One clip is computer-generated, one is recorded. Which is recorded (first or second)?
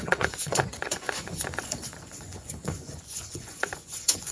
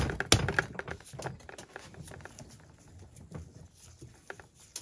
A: second